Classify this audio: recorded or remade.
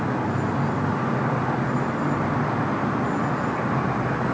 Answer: recorded